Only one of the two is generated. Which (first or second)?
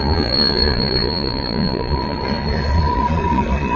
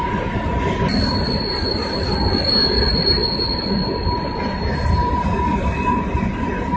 first